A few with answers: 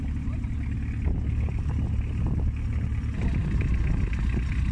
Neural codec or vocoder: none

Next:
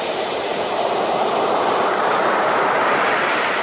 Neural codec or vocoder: vocoder, BigVGAN v2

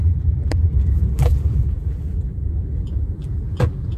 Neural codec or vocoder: vocoder, BigVGAN v2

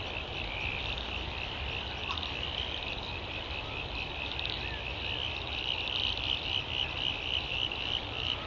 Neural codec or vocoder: none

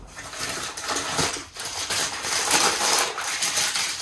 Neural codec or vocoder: vocoder, BigVGAN v2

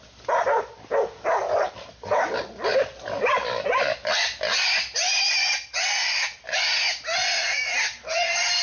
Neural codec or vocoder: none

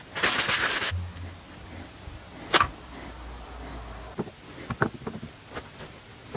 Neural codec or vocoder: none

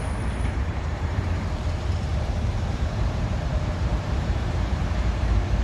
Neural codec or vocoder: vocoder, BigVGAN v2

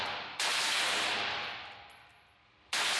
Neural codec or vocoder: vocoder, BigVGAN v2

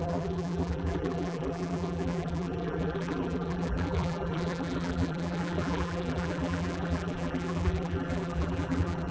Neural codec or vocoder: vocoder, BigVGAN v2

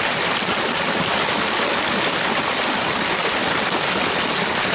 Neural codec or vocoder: none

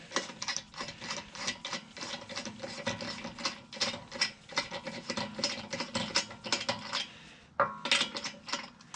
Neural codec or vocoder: none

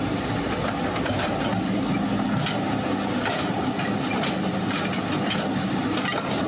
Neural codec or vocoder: none